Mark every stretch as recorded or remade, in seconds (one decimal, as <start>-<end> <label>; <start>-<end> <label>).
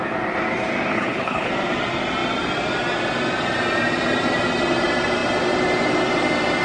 0.0-0.9 recorded; 0.9-1.5 remade; 1.5-6.6 recorded